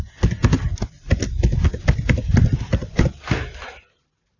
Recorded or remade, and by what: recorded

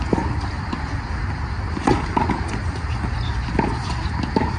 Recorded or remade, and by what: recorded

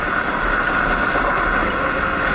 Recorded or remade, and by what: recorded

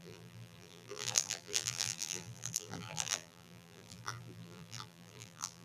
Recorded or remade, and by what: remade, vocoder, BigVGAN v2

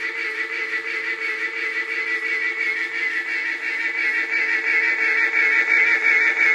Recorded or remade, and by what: recorded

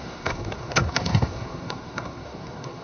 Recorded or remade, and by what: remade, codec, SNAC